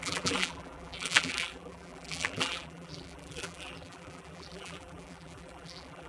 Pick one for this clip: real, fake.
fake